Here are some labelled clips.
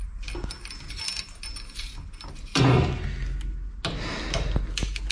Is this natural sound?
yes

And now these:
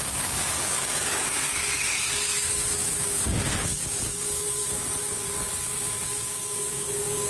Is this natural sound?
no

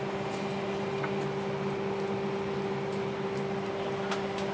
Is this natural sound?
yes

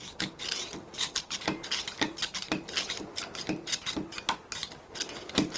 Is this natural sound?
yes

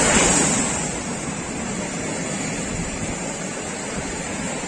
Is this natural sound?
yes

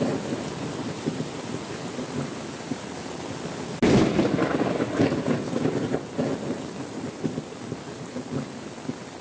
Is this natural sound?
yes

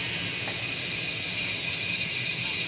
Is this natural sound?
yes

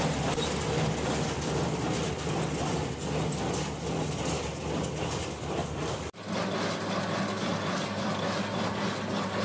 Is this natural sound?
yes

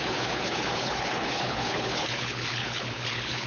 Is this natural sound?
no